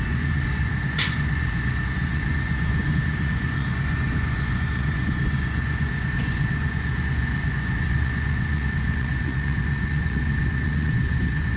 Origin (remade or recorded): remade